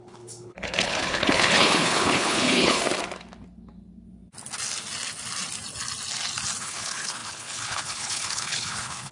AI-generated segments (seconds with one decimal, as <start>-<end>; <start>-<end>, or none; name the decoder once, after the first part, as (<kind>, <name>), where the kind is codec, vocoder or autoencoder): 0.0-2.8 (codec, HILCodec); 6.6-9.1